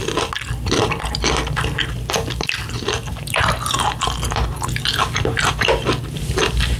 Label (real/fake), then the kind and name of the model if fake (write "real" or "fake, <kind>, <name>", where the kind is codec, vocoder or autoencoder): real